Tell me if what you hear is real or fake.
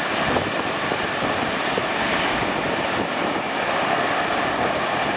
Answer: real